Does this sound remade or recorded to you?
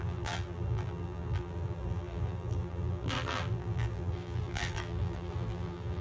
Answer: remade